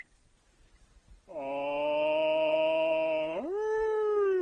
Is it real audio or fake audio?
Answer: real